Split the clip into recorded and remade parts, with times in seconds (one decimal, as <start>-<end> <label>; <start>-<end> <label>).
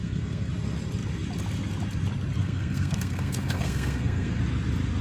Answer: 0.0-0.5 remade; 0.5-2.4 recorded; 2.4-4.4 remade; 4.4-5.0 recorded